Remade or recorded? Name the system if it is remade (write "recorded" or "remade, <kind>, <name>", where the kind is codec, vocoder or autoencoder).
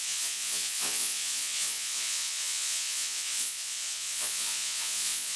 remade, vocoder, Vocos